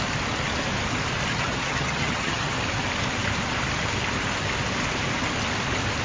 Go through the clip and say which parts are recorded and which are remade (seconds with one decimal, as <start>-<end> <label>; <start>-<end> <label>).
0.0-1.3 recorded; 1.3-2.6 remade; 2.6-6.0 recorded